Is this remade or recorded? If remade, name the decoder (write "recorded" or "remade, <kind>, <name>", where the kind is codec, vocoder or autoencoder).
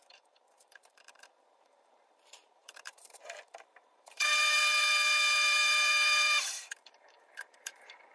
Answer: remade, vocoder, BigVGAN v2